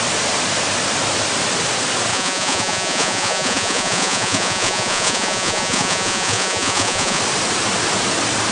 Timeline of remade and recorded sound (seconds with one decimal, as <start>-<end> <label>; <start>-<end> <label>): 0.0-2.1 recorded; 2.1-7.2 remade; 7.2-8.5 recorded